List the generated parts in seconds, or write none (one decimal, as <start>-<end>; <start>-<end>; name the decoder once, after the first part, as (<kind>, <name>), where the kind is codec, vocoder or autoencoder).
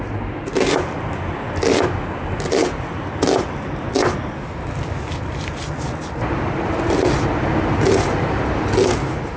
none